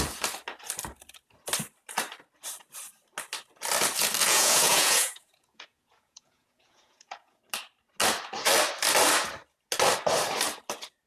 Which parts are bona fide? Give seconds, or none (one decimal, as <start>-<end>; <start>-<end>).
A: 0.0-4.2; 7.4-11.1